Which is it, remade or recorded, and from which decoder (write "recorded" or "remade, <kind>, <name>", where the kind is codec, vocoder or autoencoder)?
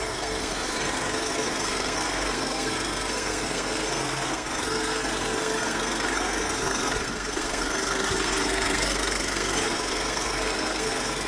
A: remade, codec, SNAC